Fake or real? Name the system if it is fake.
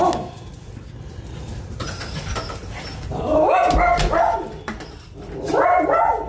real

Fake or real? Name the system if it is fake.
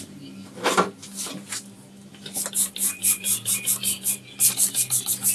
real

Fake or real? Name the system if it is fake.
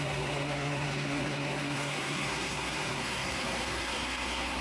fake, codec, SNAC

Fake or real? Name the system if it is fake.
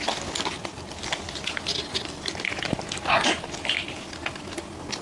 real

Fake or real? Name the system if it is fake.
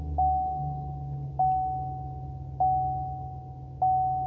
real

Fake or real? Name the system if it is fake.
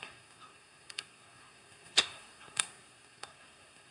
fake, codec, SNAC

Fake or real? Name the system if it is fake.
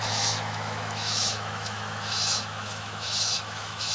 fake, autoencoder, DAC-VAE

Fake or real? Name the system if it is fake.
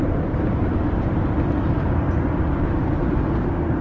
real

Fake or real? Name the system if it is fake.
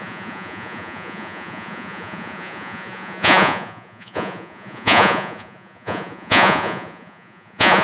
fake, vocoder, Vocos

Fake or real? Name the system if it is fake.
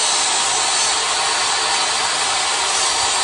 real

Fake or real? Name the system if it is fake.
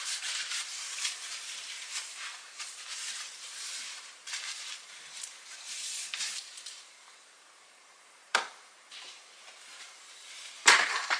fake, vocoder, BigVGAN v2